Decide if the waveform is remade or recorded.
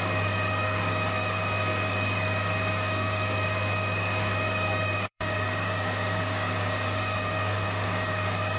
remade